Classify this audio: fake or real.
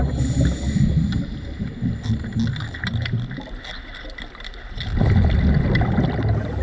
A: real